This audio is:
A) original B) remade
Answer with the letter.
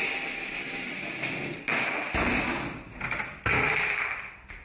A